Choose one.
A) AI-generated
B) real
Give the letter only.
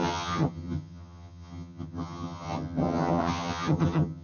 A